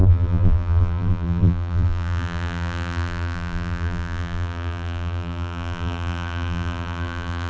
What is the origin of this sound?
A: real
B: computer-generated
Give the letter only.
B